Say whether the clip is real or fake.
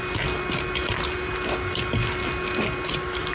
real